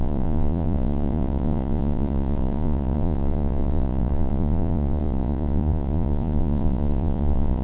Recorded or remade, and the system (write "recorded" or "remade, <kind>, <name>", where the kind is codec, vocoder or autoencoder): remade, vocoder, Vocos